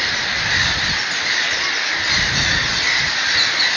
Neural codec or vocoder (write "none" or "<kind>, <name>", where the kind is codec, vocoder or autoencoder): none